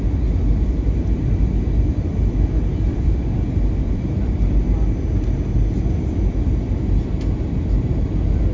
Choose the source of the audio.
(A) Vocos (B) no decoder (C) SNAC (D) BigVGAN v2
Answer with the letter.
D